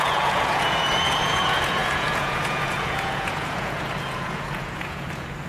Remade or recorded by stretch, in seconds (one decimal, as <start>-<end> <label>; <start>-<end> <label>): 0.0-5.5 remade